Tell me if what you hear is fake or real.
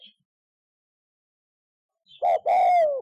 real